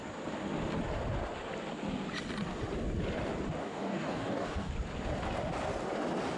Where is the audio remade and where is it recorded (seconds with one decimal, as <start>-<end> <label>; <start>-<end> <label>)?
0.0-3.6 recorded; 3.6-4.7 remade; 4.7-6.4 recorded